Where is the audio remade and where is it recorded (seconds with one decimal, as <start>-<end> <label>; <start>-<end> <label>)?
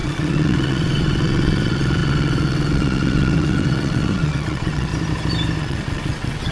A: 0.0-4.9 remade; 4.9-5.6 recorded; 5.6-6.5 remade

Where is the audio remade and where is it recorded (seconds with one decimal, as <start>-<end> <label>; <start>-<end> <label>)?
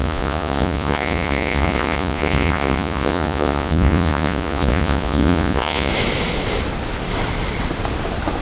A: 0.0-5.9 remade; 5.9-8.4 recorded